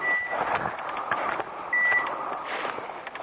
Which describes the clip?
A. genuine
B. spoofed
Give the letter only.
A